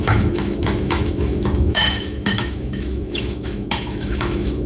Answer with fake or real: fake